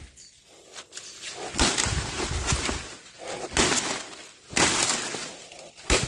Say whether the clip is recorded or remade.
recorded